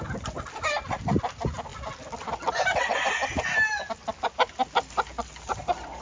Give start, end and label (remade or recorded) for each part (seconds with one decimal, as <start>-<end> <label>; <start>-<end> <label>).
0.0-6.0 recorded